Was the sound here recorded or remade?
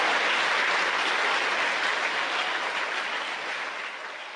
recorded